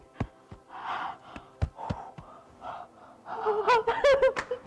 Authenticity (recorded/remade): recorded